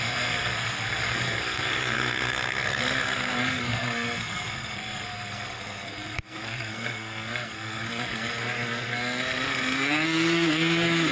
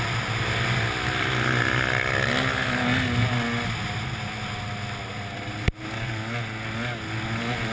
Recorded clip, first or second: second